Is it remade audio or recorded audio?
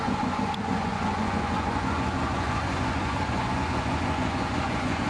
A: remade